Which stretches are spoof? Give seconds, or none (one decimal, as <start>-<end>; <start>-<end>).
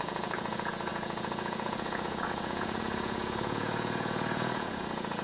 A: 0.0-5.2